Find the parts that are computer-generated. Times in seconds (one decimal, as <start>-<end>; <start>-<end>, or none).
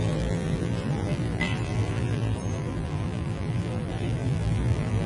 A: 0.0-5.1